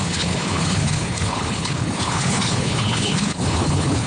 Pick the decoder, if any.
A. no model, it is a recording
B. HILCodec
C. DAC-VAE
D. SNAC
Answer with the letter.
B